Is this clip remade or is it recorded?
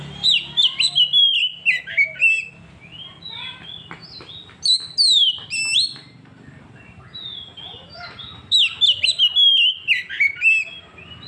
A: recorded